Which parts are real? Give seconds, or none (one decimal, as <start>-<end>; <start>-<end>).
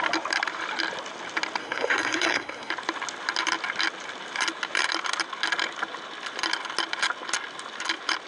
0.0-1.6; 2.7-8.3